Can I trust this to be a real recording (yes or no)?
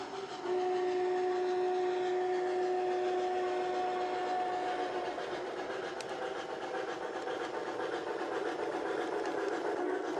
yes